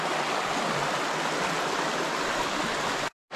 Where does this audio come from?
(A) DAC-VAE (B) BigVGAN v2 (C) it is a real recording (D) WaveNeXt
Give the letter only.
C